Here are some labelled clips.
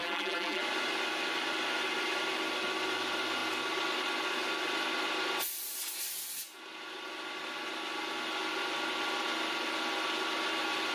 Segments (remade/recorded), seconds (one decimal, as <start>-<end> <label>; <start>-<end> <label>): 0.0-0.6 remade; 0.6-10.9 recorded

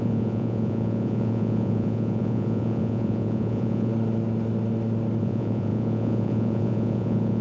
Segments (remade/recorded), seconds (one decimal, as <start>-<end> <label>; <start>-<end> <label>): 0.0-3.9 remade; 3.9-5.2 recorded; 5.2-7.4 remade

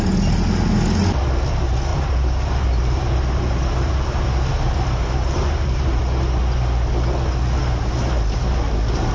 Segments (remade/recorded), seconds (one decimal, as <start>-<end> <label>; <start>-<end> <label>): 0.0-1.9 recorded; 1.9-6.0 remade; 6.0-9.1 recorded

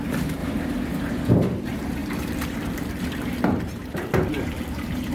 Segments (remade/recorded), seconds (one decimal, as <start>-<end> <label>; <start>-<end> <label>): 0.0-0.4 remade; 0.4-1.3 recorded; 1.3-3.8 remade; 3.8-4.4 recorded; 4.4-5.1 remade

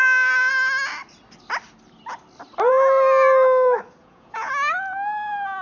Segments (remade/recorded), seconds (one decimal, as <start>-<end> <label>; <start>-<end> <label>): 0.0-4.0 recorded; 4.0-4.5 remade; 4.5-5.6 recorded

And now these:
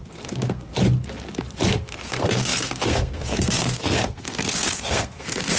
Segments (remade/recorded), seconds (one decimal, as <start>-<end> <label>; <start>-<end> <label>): 0.0-0.7 remade; 0.7-1.7 recorded; 1.7-5.6 remade